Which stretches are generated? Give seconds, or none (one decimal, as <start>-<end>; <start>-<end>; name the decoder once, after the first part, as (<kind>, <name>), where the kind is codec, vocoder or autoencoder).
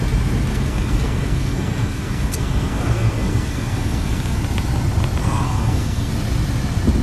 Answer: 0.5-4.4 (codec, SNAC); 5.2-6.1